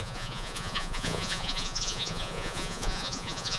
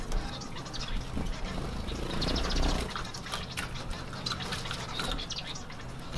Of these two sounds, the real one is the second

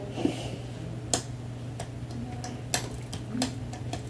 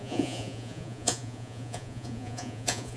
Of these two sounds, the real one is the first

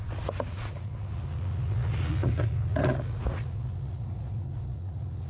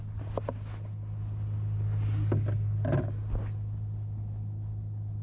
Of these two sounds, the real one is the second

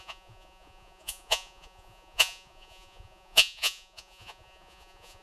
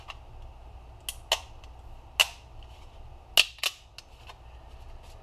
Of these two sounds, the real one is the second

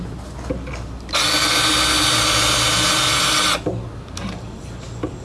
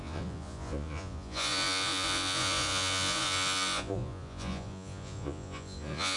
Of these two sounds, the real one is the first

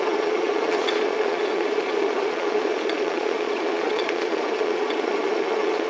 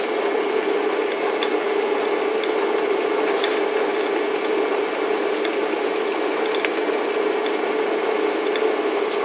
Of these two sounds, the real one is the second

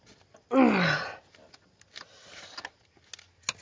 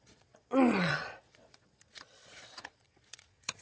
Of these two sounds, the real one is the first